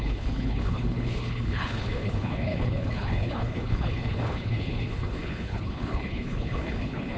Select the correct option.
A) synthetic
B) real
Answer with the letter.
A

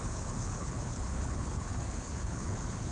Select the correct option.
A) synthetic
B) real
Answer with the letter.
A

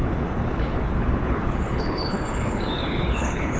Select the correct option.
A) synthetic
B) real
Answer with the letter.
A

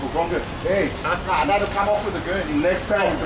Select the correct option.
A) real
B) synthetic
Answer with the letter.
A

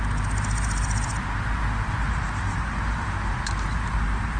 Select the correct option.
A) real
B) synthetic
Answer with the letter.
A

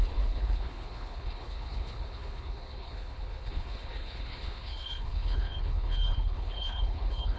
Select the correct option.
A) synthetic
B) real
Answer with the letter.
A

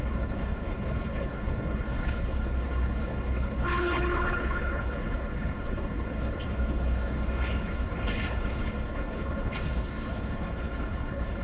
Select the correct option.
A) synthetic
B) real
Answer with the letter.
A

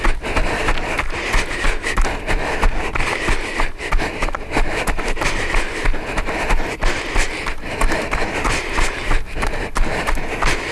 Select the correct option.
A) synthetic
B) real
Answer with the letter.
B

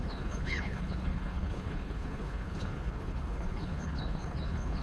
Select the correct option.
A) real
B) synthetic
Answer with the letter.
B